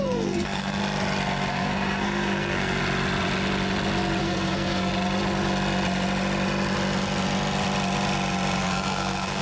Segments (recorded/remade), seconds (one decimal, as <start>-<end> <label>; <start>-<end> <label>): 0.0-0.8 remade; 0.8-1.5 recorded; 1.5-2.8 remade; 2.8-4.2 recorded; 4.2-4.9 remade; 4.9-8.6 recorded; 8.6-9.4 remade